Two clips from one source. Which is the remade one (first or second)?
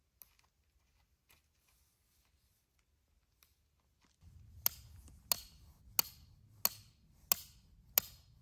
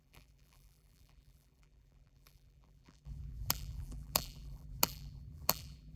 second